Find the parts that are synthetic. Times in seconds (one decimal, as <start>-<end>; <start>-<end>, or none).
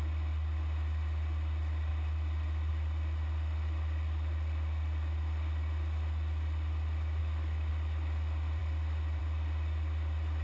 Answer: 7.2-7.7